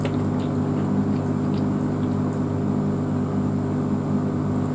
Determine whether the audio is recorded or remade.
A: recorded